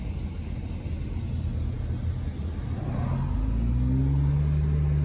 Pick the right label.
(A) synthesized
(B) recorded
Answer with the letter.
B